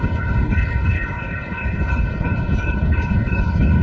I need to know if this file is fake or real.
fake